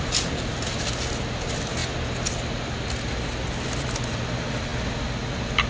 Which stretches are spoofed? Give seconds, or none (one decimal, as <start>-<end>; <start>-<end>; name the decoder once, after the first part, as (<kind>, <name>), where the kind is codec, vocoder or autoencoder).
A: none